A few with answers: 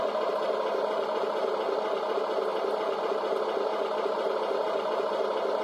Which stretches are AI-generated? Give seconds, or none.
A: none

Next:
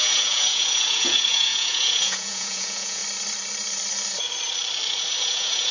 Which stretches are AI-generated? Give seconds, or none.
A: 0.0-3.0 (vocoder, Vocos); 5.2-5.7